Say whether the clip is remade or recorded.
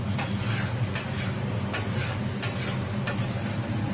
recorded